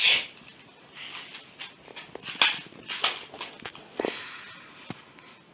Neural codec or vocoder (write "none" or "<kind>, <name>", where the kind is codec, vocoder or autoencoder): none